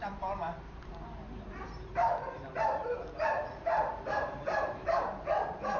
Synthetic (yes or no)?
yes